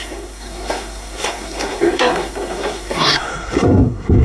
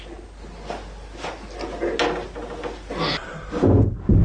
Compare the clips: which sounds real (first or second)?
second